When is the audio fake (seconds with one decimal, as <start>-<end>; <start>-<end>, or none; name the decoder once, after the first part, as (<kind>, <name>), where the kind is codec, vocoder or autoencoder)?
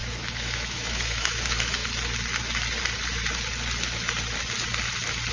0.0-1.8 (autoencoder, DAC-VAE)